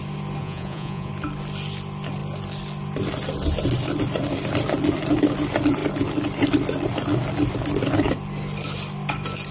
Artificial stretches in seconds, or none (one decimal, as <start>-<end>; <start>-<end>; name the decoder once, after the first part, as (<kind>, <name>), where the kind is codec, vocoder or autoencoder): 0.4-1.1 (vocoder, Vocos)